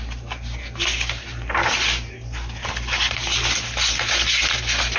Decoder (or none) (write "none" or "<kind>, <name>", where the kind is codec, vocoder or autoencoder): none